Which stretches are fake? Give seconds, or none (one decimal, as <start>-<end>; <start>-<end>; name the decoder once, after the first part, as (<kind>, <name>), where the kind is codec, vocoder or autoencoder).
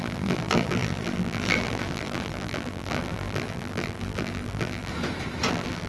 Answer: 0.0-4.9 (vocoder, BigVGAN v2); 5.5-5.9